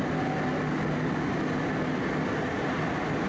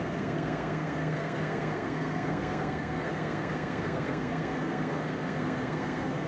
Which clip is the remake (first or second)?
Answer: second